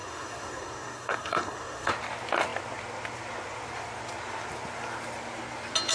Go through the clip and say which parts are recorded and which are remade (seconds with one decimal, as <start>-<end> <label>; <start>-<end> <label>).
0.0-1.9 remade; 1.9-5.9 recorded